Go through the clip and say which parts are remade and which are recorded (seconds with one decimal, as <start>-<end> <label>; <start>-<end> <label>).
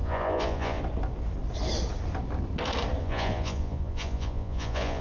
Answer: 0.0-0.8 remade; 0.8-3.0 recorded; 3.0-5.0 remade